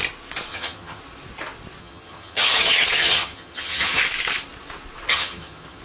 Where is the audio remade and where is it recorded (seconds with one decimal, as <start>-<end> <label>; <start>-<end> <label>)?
0.0-0.5 recorded; 0.5-1.0 remade; 1.0-1.8 recorded; 1.8-4.0 remade; 4.0-5.1 recorded; 5.1-5.8 remade

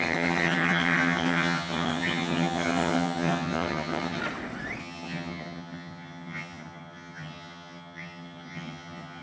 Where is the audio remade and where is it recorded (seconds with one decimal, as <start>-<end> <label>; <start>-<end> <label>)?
0.0-4.2 remade; 4.2-4.8 recorded; 4.8-9.2 remade

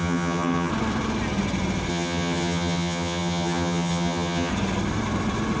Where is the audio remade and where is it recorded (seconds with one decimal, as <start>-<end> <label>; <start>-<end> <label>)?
0.0-0.7 remade; 0.7-1.9 recorded; 1.9-4.5 remade; 4.5-5.6 recorded

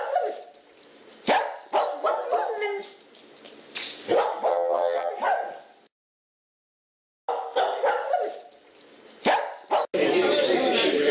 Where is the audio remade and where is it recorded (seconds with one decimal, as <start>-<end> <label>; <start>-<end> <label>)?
0.0-4.5 recorded; 4.5-5.1 remade; 5.1-11.1 recorded

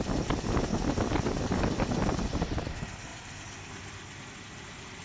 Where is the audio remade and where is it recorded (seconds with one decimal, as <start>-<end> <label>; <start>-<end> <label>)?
0.0-5.0 recorded

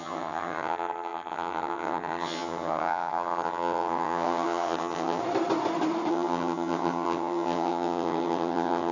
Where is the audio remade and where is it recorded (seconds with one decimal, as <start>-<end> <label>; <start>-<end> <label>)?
0.0-5.2 remade; 5.2-6.1 recorded; 6.1-8.9 remade

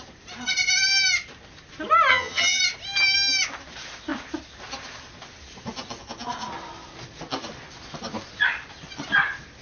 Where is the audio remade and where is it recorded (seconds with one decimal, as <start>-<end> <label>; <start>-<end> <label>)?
0.0-2.1 recorded; 2.1-2.6 remade; 2.6-9.6 recorded